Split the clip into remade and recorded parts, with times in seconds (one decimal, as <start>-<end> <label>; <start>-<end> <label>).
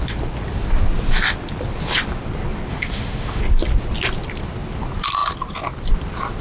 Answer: 0.0-2.7 recorded; 2.7-3.4 remade; 3.4-6.4 recorded